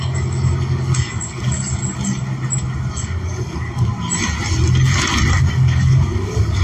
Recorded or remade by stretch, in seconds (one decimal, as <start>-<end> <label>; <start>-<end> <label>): 0.0-1.8 remade; 1.8-2.9 recorded; 2.9-3.9 remade; 3.9-5.4 recorded; 5.4-6.6 remade